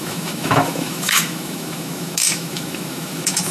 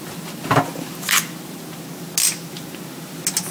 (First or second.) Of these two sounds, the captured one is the second